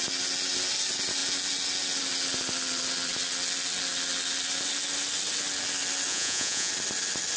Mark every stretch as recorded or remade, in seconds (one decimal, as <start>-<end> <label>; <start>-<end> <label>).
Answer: 0.0-6.1 recorded; 6.1-6.7 remade; 6.7-7.4 recorded